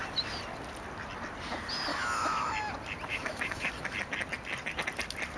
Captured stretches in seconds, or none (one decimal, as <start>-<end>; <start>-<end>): 0.0-1.9; 2.5-3.1; 3.7-5.4